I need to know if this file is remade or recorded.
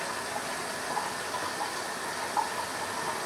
recorded